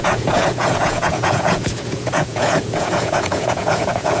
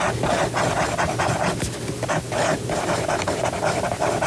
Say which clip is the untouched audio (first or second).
second